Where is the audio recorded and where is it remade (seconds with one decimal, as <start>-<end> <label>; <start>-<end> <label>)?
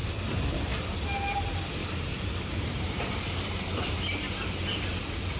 0.0-1.8 recorded; 1.8-5.0 remade; 5.0-5.4 recorded